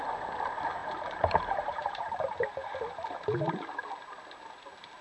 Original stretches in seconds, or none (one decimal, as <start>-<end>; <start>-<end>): 0.0-0.8; 3.8-5.0